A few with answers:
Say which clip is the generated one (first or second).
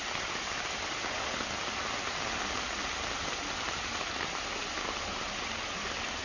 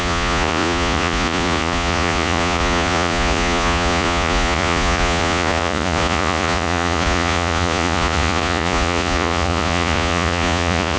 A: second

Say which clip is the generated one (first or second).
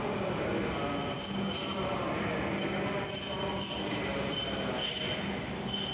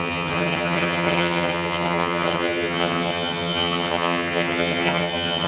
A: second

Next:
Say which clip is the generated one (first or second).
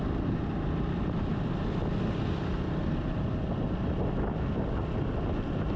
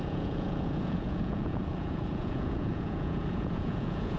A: second